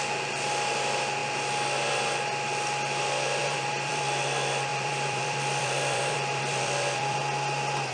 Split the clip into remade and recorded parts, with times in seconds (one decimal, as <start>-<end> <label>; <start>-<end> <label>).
0.0-3.4 recorded; 3.4-4.0 remade; 4.0-4.7 recorded; 4.7-7.2 remade; 7.2-7.9 recorded